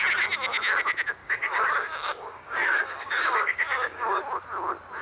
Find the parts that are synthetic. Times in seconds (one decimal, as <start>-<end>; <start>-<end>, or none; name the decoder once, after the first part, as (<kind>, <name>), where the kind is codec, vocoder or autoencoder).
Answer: 1.2-4.2 (codec, DAC)